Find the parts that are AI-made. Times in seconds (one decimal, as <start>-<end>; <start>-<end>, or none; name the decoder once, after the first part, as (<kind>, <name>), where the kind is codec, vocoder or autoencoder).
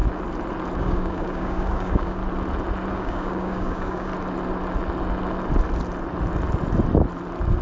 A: 0.8-2.2 (codec, DAC); 2.9-4.1